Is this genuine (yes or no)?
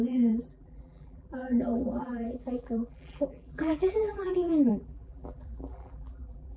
no